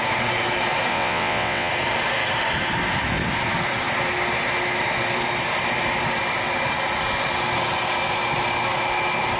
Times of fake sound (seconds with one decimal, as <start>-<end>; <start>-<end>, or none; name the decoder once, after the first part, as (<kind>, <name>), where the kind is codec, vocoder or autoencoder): 0.9-1.7 (vocoder, WaveNeXt)